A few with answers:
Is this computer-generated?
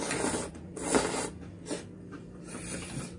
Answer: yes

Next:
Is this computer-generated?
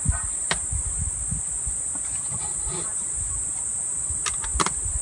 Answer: no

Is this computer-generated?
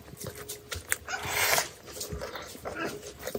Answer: no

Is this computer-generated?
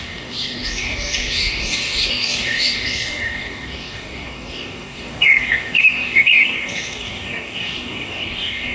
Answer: yes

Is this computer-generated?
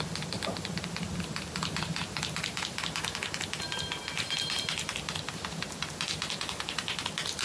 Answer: no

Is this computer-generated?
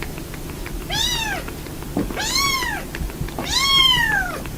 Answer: yes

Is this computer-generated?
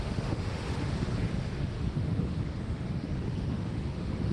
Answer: yes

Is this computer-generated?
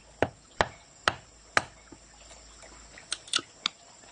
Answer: no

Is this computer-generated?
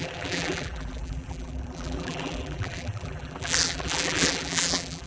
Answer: yes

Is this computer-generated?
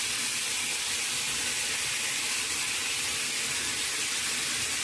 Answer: no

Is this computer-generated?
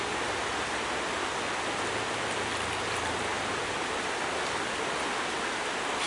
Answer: no